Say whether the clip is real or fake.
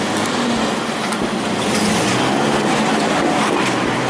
real